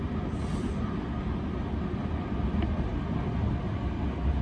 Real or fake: real